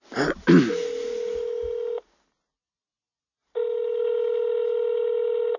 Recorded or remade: recorded